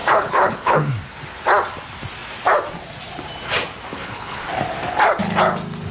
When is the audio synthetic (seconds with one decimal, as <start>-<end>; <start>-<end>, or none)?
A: 0.0-0.9; 3.9-4.4